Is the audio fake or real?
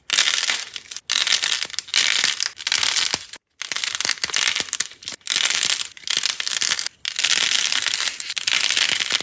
real